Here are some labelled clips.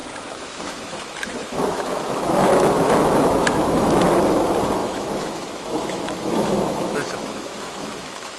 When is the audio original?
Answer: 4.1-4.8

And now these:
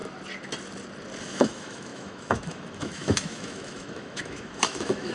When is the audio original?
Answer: 0.0-1.2

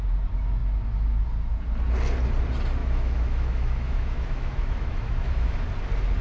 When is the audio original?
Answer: 0.0-2.8; 5.6-6.2

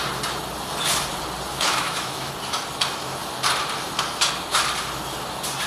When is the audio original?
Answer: 0.0-1.5; 2.3-5.7